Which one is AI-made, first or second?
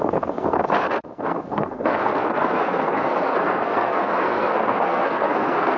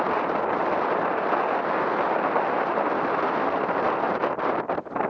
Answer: first